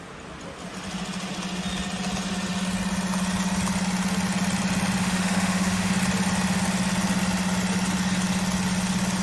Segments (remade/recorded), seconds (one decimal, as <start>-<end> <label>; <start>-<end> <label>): 0.0-5.0 recorded; 5.0-5.9 remade; 5.9-9.2 recorded